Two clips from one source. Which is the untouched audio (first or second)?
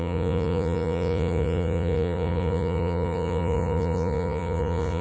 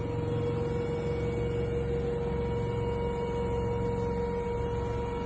second